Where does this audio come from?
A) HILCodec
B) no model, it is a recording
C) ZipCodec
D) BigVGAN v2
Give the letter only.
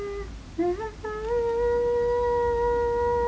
B